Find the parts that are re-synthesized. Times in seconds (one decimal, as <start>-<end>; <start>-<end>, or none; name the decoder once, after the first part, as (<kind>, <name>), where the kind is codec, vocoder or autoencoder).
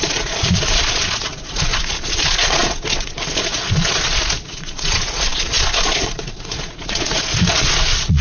0.0-8.2 (vocoder, Vocos)